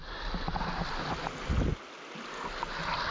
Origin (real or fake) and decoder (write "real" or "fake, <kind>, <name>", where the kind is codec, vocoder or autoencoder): real